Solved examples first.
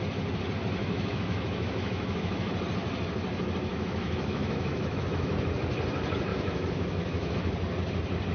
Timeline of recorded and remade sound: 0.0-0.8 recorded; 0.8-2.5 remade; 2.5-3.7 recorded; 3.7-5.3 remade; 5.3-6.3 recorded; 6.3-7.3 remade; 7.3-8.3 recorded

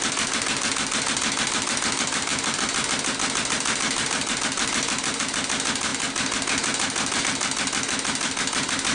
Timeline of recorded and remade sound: 0.0-8.9 recorded

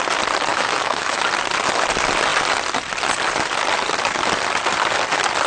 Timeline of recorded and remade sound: 0.0-0.5 recorded; 0.5-1.2 remade; 1.2-5.5 recorded

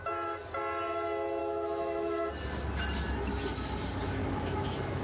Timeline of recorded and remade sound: 0.0-1.4 recorded; 1.4-2.3 remade; 2.3-4.2 recorded; 4.2-5.0 remade